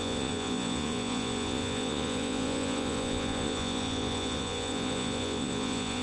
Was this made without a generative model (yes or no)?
no